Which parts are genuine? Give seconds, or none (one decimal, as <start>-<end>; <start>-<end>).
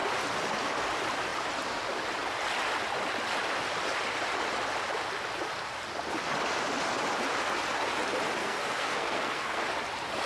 0.0-8.4; 9.6-10.3